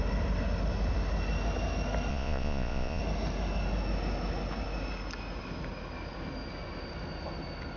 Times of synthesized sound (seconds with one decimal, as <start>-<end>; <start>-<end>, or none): 2.1-3.0